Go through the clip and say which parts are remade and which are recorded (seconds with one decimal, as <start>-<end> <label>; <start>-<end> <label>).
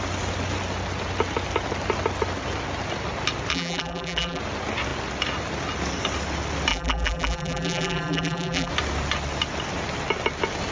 0.0-3.5 recorded; 3.5-4.4 remade; 4.4-6.7 recorded; 6.7-8.7 remade; 8.7-10.7 recorded